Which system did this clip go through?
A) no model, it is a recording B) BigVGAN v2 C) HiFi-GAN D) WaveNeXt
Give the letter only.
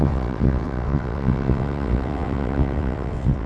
D